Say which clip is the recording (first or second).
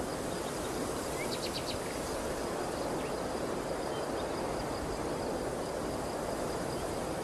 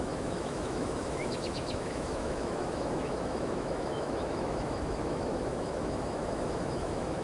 first